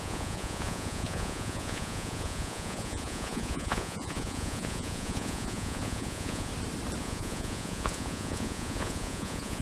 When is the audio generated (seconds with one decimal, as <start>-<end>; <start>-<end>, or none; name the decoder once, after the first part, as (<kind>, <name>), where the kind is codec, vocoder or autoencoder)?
0.0-6.5 (vocoder, Vocos); 7.0-9.6

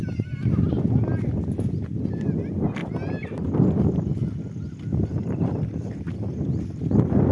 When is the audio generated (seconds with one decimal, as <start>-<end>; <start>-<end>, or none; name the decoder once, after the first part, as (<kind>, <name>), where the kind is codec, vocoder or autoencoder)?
none